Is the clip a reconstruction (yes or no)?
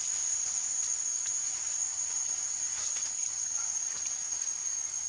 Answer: no